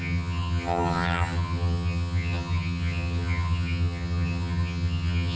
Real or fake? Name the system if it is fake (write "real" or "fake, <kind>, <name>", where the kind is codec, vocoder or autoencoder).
fake, vocoder, HiFi-GAN